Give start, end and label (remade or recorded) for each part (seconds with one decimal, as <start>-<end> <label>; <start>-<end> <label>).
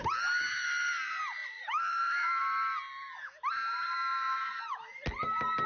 0.0-5.7 recorded